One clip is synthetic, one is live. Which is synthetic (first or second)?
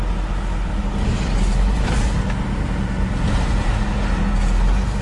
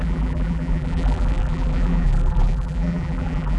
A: second